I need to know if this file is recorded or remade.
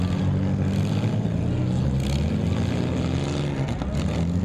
recorded